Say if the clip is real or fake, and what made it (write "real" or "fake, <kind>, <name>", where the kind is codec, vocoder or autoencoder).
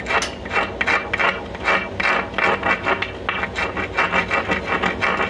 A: real